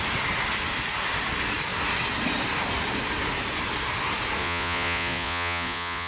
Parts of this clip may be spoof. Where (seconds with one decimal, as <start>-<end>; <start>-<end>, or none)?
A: 4.4-6.1